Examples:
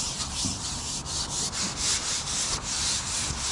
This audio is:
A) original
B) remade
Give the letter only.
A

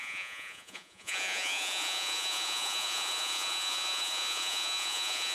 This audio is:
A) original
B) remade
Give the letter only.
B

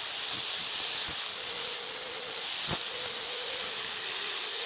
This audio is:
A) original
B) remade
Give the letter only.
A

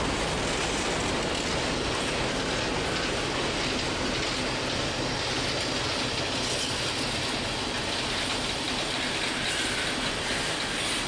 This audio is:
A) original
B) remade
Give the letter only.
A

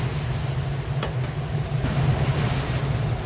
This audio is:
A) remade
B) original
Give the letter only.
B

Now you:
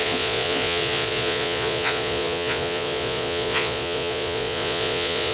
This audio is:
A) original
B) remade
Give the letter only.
B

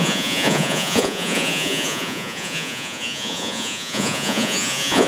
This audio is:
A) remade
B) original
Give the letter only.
A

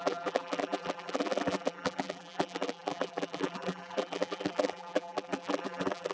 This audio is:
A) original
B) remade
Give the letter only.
B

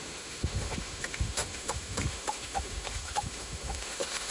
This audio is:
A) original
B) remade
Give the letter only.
B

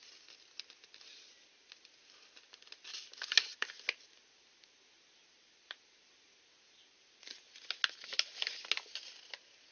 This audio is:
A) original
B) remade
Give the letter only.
A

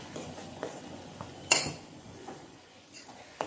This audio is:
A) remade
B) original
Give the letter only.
A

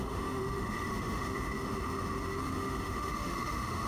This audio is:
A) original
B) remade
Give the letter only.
B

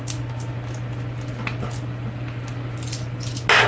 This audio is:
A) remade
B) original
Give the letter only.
B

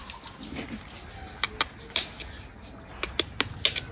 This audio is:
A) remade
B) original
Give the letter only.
B